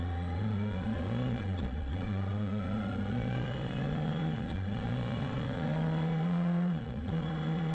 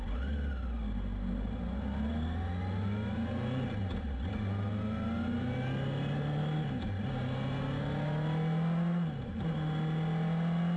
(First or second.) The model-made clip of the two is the first